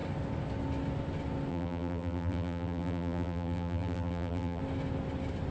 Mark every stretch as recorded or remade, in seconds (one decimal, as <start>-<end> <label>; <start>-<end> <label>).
0.0-1.5 recorded; 1.5-4.6 remade; 4.6-5.5 recorded